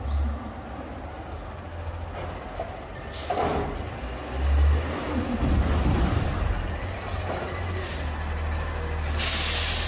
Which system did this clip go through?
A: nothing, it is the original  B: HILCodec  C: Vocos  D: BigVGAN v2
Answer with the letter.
A